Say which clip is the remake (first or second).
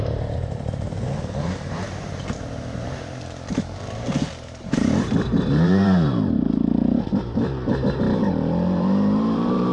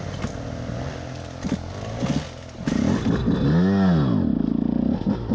first